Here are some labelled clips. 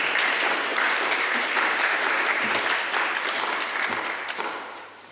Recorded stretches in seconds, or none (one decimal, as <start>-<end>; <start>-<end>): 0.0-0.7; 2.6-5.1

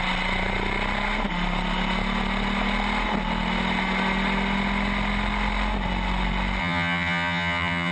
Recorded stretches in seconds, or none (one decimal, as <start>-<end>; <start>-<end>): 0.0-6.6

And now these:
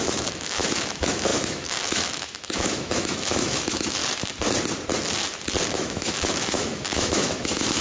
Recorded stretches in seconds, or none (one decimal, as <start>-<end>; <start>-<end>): 4.0-5.7

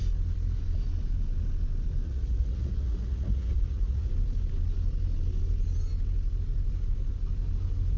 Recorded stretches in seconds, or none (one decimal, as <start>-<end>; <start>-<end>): 0.0-2.0; 4.1-8.0

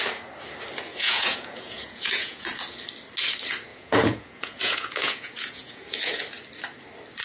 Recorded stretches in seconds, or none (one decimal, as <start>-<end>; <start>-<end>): 0.0-0.9; 2.8-3.7; 6.2-7.2